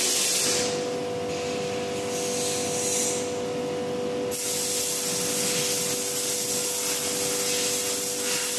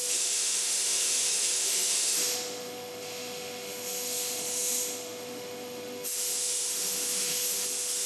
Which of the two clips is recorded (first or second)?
first